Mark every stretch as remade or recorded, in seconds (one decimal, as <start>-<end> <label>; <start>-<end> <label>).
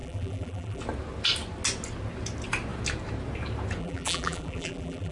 0.0-0.8 remade; 0.8-3.8 recorded; 3.8-5.1 remade